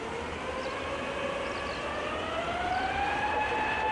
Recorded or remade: recorded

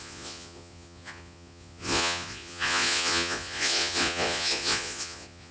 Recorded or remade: remade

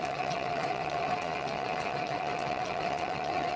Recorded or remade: remade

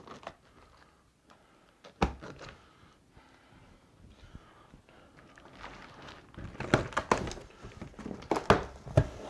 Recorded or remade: recorded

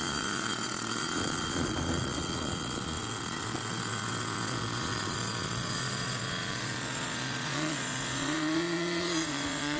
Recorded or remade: remade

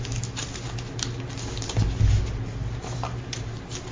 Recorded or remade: recorded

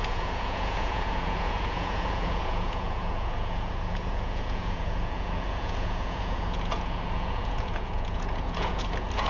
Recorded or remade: remade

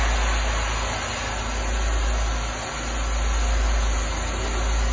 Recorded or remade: recorded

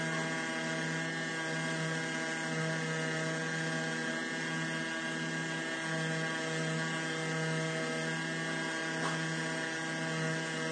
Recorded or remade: recorded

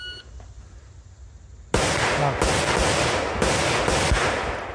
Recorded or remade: recorded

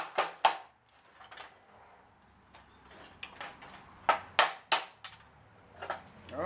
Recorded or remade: recorded